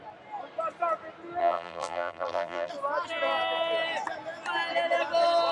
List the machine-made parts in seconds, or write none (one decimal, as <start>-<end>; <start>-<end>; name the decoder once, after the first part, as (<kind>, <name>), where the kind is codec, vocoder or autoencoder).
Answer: 1.4-2.7 (vocoder, BigVGAN v2)